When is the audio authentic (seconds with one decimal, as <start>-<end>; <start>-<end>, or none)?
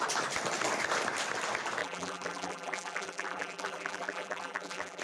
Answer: 0.0-1.8